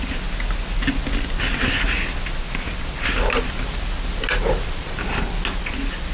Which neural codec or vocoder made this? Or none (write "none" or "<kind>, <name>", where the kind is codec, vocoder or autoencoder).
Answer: none